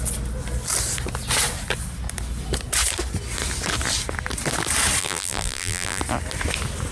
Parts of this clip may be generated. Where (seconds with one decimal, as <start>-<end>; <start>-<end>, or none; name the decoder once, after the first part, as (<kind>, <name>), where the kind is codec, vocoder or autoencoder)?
5.0-6.0 (vocoder, BigVGAN v2)